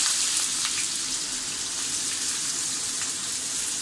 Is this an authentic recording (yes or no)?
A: yes